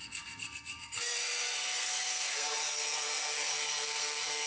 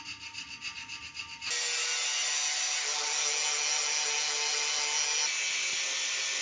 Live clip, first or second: second